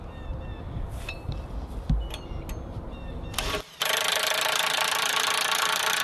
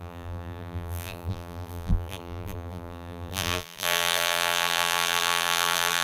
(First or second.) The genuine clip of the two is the first